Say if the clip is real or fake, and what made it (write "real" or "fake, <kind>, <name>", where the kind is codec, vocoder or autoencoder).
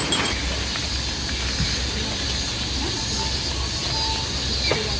real